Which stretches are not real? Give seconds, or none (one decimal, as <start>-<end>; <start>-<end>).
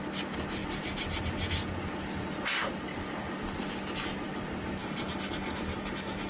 4.8-6.3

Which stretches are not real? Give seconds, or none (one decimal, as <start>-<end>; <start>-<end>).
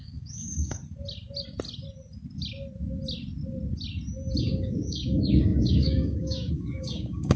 0.0-0.8; 4.4-7.4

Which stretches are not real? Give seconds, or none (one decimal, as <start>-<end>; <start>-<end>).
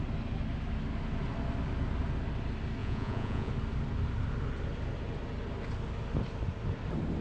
2.8-3.5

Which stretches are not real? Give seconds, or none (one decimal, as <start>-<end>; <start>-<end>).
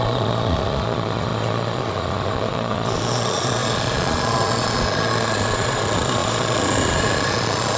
0.0-7.8